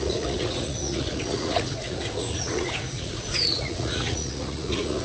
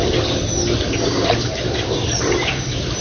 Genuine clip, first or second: second